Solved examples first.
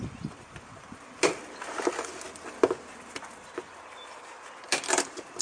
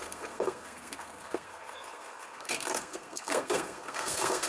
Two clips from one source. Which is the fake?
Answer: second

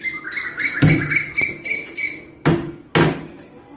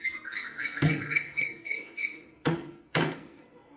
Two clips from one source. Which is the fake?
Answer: second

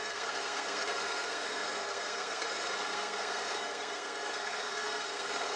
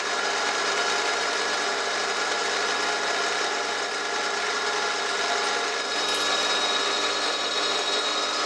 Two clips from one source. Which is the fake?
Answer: first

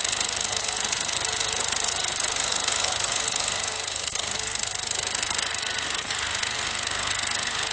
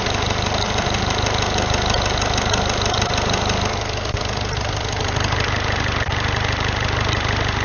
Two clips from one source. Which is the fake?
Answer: first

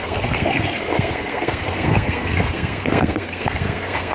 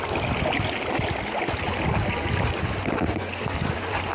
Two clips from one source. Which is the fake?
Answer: first